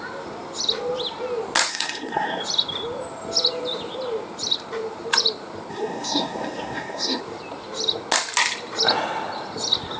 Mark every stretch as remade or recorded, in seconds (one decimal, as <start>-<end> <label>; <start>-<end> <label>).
0.0-1.7 recorded; 1.7-2.4 remade; 2.4-5.7 recorded; 5.7-7.2 remade; 7.2-10.0 recorded